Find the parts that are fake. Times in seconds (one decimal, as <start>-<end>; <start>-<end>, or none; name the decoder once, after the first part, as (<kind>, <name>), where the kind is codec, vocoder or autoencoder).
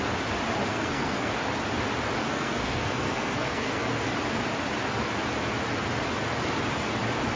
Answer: 0.7-1.3 (codec, SNAC); 2.2-4.1